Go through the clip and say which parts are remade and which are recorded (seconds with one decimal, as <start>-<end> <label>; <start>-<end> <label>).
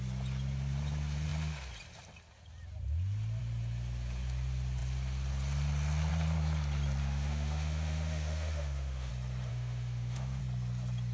0.0-7.0 recorded; 7.0-9.1 remade; 9.1-9.5 recorded; 9.5-10.4 remade; 10.4-11.1 recorded